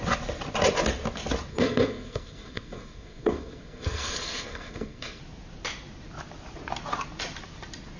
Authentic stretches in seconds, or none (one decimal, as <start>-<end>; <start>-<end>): 0.0-1.5; 5.2-8.0